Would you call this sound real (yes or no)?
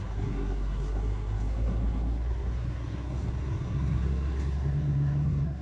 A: no